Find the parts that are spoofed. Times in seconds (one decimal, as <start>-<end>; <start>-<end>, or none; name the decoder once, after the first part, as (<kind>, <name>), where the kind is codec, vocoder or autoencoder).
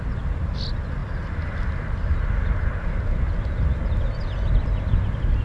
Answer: none